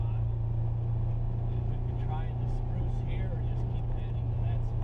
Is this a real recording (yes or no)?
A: yes